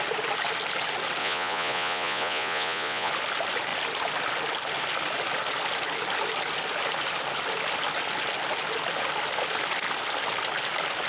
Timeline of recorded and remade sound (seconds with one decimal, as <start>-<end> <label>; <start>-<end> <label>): 0.0-1.2 recorded; 1.2-3.1 remade; 3.1-11.1 recorded